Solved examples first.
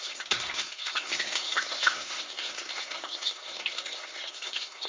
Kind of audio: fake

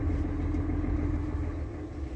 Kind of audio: real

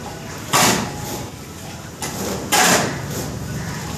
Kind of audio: real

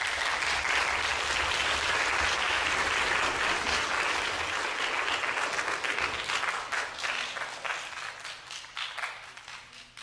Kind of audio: real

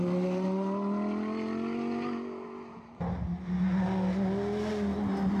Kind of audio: real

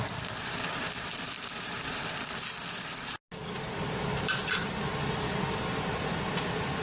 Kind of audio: real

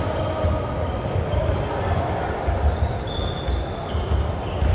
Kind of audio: real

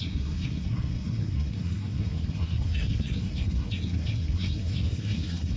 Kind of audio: fake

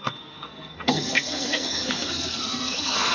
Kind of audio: fake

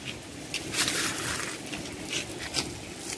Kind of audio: real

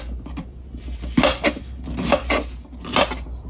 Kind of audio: real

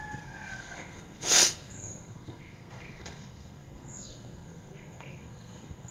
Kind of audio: fake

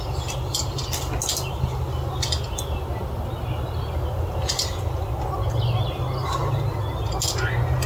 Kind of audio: real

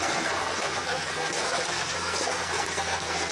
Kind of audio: fake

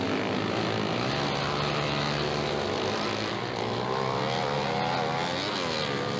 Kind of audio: real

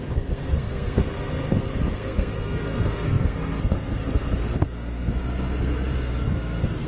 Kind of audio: fake